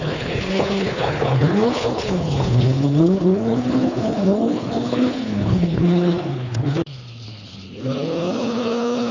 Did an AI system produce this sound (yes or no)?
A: yes